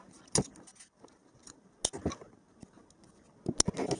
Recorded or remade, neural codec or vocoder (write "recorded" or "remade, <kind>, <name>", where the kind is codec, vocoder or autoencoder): recorded